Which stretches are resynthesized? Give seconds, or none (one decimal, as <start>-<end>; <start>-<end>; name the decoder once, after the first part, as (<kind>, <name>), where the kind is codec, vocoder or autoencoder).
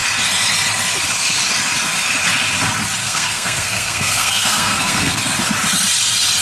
3.0-5.2 (codec, SNAC)